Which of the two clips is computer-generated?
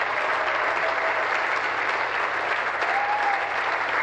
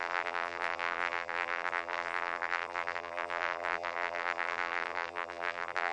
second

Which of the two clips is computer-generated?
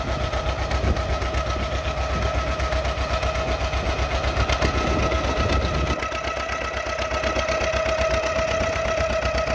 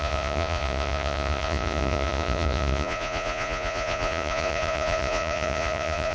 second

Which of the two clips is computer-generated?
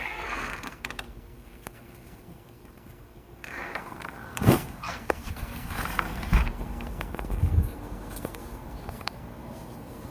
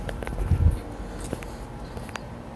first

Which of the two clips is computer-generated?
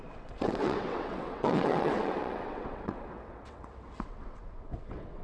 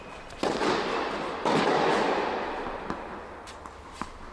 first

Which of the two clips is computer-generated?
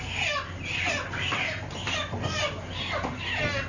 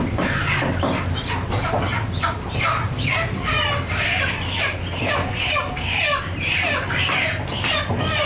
second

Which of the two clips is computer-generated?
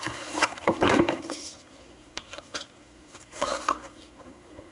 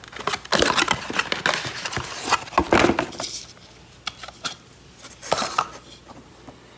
first